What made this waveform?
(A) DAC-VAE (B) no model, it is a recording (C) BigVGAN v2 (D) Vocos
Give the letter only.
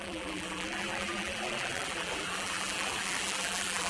C